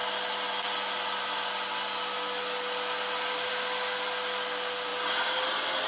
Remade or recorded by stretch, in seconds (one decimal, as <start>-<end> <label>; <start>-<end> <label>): 0.0-5.9 recorded